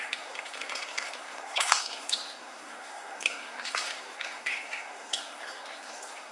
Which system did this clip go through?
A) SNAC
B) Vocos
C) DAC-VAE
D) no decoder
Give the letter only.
A